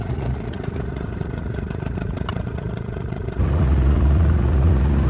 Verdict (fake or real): fake